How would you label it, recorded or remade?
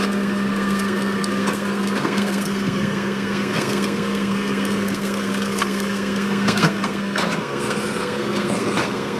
remade